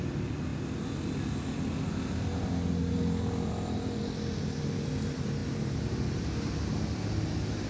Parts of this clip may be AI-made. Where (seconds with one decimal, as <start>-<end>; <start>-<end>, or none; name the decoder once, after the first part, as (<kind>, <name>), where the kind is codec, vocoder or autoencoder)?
none